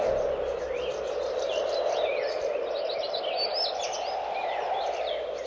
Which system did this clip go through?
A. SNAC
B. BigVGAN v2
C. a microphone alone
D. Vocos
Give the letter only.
C